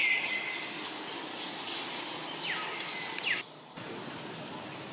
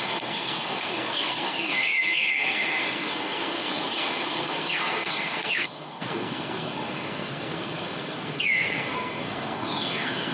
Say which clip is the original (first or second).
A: first